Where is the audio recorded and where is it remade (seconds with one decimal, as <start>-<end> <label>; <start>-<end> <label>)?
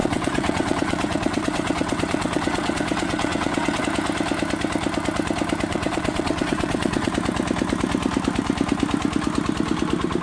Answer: 0.0-3.8 remade; 3.8-5.7 recorded; 5.7-7.1 remade; 7.1-10.2 recorded